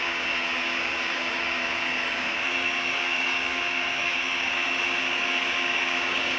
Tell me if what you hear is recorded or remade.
remade